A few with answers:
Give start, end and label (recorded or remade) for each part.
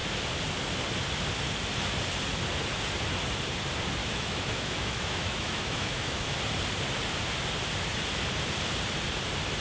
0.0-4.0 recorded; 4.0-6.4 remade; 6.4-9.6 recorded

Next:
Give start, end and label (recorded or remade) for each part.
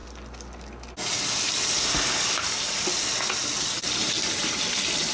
0.0-5.1 recorded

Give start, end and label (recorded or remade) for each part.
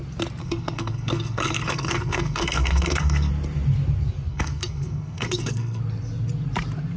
0.0-0.4 recorded; 0.4-3.3 remade; 3.3-4.3 recorded; 4.3-5.8 remade; 5.8-7.0 recorded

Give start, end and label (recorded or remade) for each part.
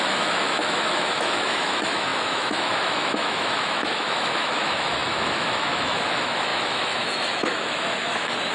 0.0-8.5 remade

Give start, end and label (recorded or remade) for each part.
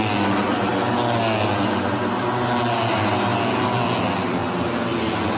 0.0-5.4 recorded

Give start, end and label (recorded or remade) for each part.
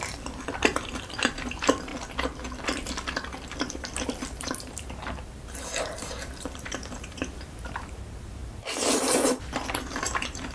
0.0-1.9 remade; 1.9-3.7 recorded; 3.7-10.5 remade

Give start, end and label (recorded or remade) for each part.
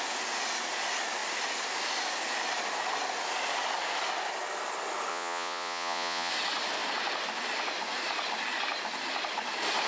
0.0-5.1 recorded; 5.1-6.3 remade; 6.3-9.9 recorded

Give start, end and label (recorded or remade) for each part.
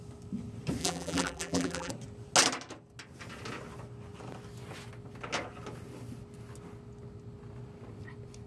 0.0-0.8 recorded; 0.8-1.9 remade; 1.9-8.5 recorded